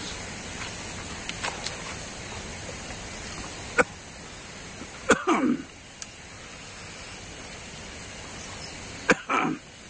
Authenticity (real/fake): real